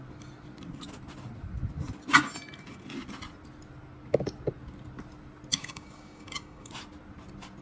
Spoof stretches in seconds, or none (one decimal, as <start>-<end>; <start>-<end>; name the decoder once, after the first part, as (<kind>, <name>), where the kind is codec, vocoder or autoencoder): 5.5-6.7 (codec, DAC)